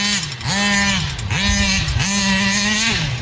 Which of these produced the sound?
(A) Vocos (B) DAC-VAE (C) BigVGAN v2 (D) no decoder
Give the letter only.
D